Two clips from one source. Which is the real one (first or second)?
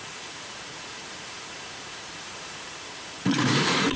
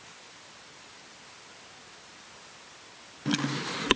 second